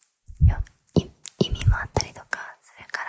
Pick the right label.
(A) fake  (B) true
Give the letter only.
B